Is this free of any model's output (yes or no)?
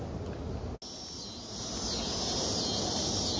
yes